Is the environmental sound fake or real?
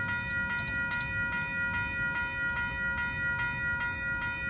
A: real